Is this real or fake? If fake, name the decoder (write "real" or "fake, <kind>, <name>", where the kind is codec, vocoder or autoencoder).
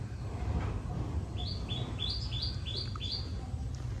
real